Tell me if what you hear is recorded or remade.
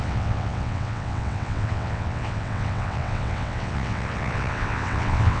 remade